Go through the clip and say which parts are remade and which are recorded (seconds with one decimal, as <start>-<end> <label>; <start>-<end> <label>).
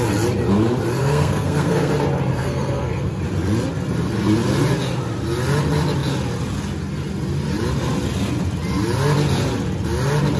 0.0-1.0 recorded; 1.0-1.9 remade; 1.9-2.3 recorded; 2.3-3.2 remade; 3.2-10.4 recorded